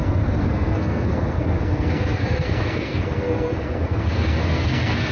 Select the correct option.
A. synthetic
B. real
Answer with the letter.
A